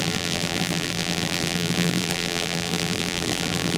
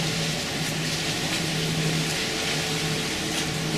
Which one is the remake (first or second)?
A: first